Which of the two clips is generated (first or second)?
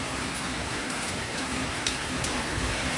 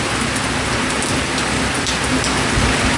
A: first